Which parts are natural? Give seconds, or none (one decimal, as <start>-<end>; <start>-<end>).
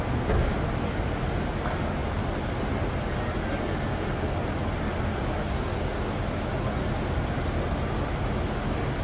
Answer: 0.0-9.0